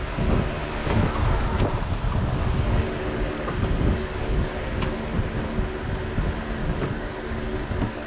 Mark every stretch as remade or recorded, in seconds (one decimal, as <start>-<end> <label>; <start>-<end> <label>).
0.0-0.8 recorded; 0.8-1.6 remade; 1.6-2.2 recorded; 2.2-4.5 remade; 4.5-6.6 recorded; 6.6-8.1 remade